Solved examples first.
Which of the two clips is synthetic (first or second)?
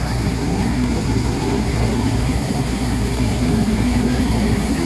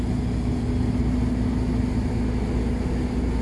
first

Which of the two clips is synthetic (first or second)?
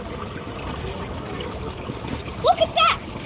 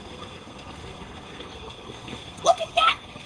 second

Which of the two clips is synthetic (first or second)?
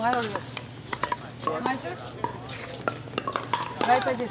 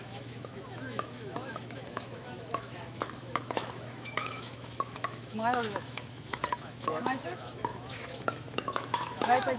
second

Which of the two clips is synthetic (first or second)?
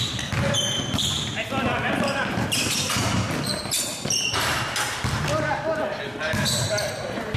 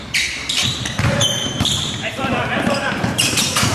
second